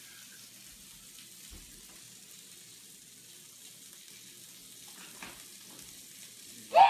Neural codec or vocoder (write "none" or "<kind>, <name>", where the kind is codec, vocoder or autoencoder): none